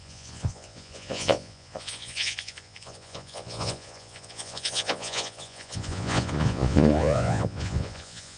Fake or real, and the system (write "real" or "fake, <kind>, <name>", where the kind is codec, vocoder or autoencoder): fake, vocoder, Vocos